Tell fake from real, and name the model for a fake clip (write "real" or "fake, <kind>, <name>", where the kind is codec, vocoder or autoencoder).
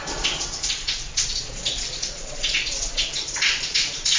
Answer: fake, vocoder, Vocos